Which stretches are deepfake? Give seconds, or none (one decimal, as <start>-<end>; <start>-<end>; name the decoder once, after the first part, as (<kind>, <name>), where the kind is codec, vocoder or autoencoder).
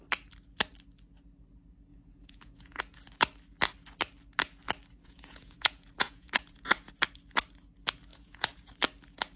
1.9-2.8 (vocoder, Vocos); 5.0-6.9; 8.1-8.6